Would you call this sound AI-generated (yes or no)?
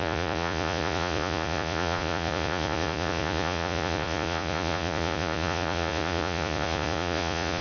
yes